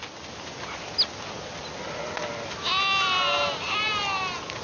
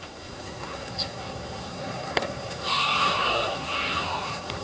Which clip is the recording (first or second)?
first